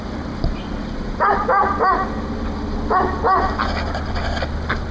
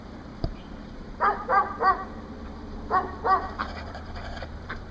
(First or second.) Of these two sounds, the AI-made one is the second